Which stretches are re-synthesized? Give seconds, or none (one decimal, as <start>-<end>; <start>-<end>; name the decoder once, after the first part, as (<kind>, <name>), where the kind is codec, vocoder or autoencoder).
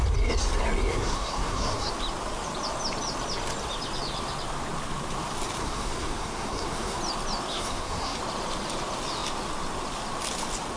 0.9-1.9 (codec, SNAC); 5.6-7.0; 7.5-8.2